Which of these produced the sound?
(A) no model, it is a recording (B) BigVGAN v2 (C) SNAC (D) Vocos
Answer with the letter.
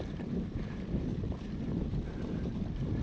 B